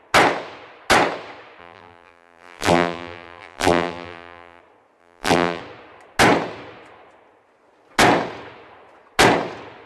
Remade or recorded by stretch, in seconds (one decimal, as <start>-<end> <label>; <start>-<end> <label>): 0.0-1.6 recorded; 1.6-4.6 remade; 4.6-5.0 recorded; 5.0-5.6 remade; 5.6-9.9 recorded